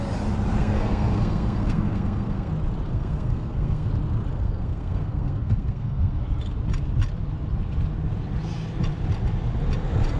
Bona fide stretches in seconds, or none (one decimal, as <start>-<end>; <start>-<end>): 0.0-0.6; 2.5-2.9; 3.9-4.3; 6.2-10.2